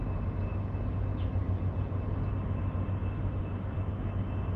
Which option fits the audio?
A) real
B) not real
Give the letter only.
A